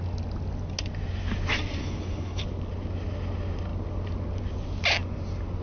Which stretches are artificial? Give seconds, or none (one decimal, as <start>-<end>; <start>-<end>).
1.8-2.4

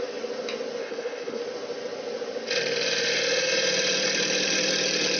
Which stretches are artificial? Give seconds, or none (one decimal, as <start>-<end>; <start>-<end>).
0.8-1.4

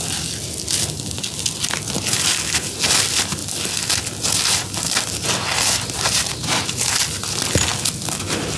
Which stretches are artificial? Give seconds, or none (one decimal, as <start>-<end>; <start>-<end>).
none